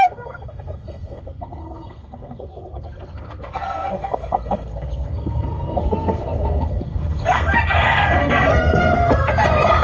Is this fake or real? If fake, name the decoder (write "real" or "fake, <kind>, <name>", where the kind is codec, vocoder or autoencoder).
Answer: fake, codec, SNAC